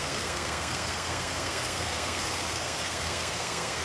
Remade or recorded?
remade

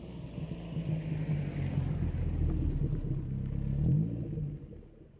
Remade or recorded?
recorded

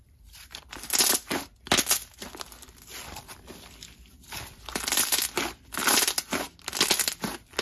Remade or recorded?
recorded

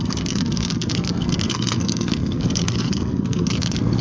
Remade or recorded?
remade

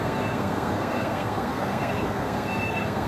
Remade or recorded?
remade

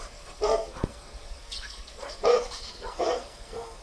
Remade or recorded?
remade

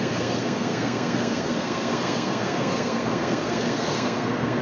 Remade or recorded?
remade